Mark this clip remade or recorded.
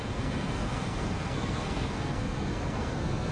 remade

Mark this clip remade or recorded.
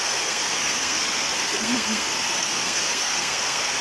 remade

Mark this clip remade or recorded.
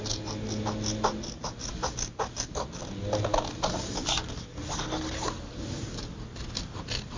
recorded